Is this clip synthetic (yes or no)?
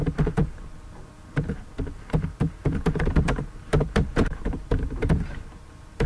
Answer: yes